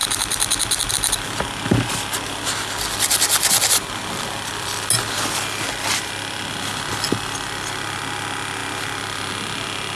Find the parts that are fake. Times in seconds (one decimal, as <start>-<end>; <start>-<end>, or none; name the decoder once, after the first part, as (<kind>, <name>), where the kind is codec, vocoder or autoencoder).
none